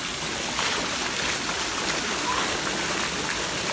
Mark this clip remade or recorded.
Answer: recorded